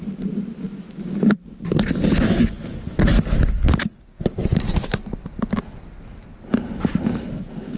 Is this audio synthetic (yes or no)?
no